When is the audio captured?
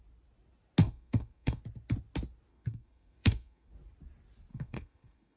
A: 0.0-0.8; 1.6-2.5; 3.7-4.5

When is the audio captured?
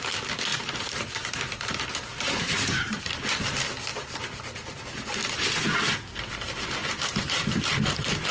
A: 0.0-0.5; 3.0-3.9; 4.8-6.8; 7.6-8.3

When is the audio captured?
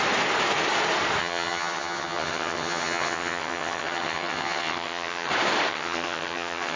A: 0.0-1.2; 5.3-5.7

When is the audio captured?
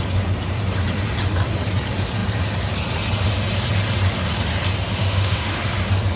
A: 0.0-5.0; 5.6-6.2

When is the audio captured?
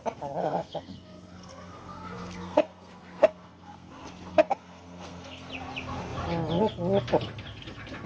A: 0.0-0.4; 3.9-4.3; 5.5-8.1